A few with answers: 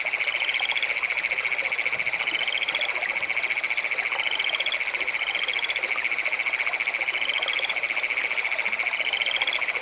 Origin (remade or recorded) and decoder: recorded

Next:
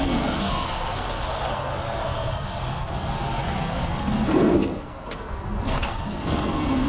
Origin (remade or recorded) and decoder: remade, codec, SNAC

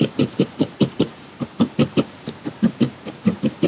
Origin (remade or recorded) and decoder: remade, vocoder, BigVGAN v2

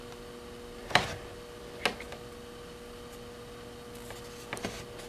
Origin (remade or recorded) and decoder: recorded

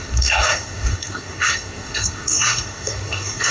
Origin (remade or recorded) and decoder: remade, codec, SNAC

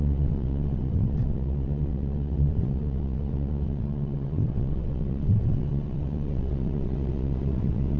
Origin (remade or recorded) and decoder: remade, vocoder, WaveNeXt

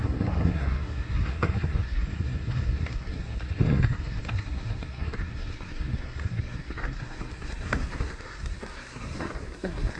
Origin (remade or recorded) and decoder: remade, codec, SNAC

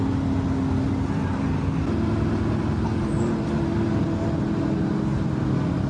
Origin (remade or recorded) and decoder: recorded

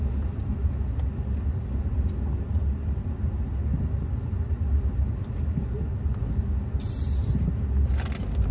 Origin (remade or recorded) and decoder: recorded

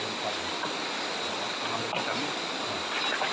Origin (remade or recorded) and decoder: recorded